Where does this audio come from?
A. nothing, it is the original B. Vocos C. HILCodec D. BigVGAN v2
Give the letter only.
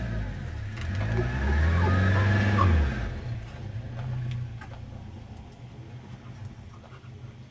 A